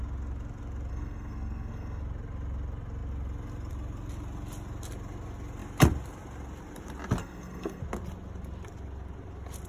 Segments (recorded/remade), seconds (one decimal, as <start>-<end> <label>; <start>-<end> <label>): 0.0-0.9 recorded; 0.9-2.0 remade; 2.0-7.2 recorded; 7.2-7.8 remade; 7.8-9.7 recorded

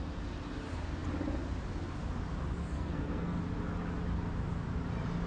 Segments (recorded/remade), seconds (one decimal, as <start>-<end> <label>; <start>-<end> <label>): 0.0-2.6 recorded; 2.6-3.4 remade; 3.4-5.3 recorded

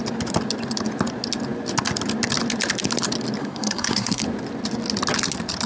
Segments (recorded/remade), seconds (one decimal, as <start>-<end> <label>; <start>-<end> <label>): 0.0-3.4 recorded; 3.4-4.2 remade; 4.2-5.7 recorded